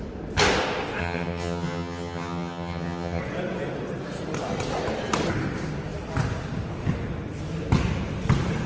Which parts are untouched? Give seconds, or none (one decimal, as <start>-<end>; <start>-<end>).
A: 0.0-1.0; 3.2-8.7